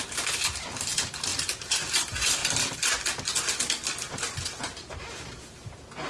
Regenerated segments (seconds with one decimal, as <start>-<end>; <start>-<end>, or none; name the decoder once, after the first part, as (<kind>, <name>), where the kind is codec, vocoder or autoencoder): none